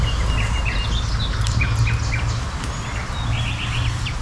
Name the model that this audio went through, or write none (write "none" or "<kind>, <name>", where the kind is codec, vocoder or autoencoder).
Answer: none